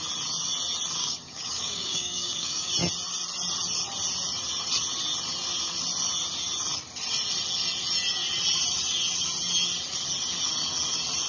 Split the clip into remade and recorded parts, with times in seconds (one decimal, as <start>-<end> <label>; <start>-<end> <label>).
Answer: 0.0-1.0 recorded; 1.0-2.7 remade; 2.7-11.3 recorded

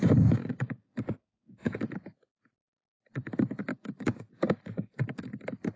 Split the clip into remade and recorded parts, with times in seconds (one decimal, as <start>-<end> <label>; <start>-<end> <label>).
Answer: 0.0-0.4 recorded; 0.4-1.9 remade; 1.9-3.7 recorded; 3.7-5.2 remade; 5.2-5.8 recorded

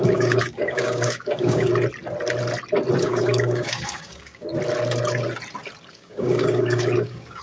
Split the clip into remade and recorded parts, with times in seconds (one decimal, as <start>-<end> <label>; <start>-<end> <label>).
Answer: 0.0-1.7 remade; 1.7-3.0 recorded; 3.0-4.5 remade; 4.5-5.9 recorded; 5.9-7.4 remade